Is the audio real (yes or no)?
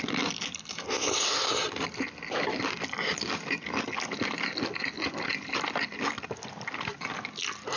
yes